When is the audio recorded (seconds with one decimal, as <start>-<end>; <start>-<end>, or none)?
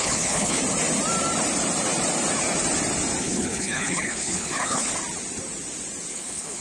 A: 0.6-3.2; 4.9-6.1